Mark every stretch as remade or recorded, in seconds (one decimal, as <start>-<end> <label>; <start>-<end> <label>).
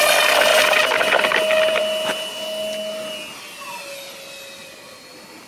0.0-0.5 recorded; 0.5-2.3 remade; 2.3-5.5 recorded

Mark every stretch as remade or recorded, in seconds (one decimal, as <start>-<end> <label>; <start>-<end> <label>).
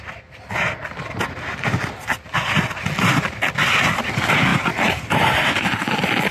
0.0-4.5 recorded; 4.5-5.8 remade; 5.8-6.3 recorded